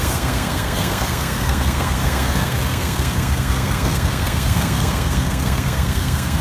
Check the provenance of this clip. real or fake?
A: fake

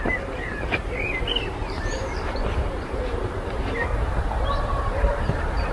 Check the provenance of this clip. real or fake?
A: fake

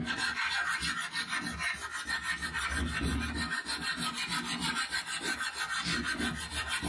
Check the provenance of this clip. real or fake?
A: real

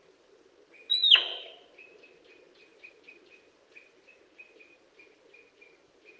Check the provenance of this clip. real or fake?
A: real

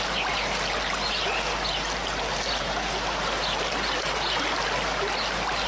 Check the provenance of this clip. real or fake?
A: real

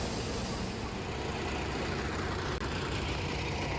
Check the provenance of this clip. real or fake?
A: real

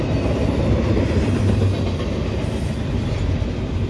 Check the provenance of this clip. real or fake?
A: real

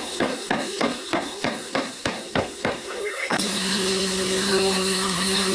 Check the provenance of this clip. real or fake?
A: fake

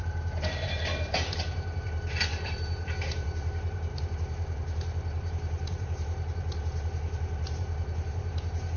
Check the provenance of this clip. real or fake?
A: fake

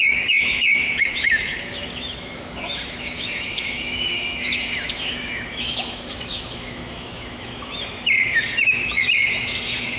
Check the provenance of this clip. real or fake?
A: fake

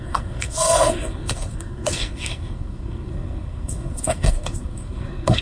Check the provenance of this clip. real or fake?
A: fake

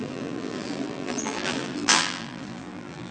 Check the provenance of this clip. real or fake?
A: fake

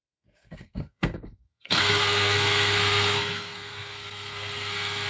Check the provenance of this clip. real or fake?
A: fake